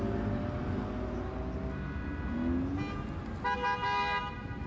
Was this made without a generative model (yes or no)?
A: yes